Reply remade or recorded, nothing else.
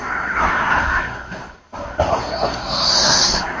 remade